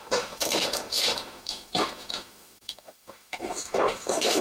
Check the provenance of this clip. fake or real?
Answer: fake